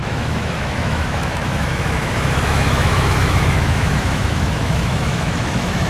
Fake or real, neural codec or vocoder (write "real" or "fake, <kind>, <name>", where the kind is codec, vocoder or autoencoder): fake, autoencoder, DAC-VAE